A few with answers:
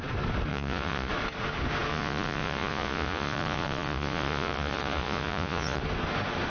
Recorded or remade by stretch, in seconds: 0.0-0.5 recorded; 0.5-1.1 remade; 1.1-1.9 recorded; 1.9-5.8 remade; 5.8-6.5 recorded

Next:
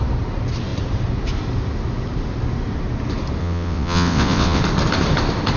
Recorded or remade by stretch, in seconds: 0.0-3.4 recorded; 3.4-4.6 remade; 4.6-5.6 recorded

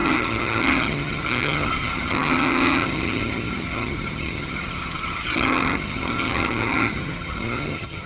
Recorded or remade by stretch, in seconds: 0.0-8.1 remade